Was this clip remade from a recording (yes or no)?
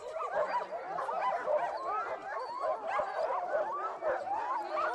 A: no